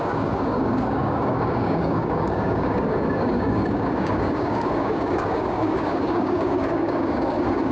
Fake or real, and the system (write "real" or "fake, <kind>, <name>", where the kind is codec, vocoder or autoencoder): fake, codec, DAC